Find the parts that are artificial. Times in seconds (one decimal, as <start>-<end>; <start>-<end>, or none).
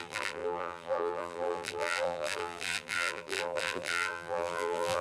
0.0-5.0